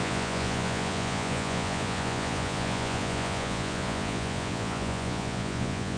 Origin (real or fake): fake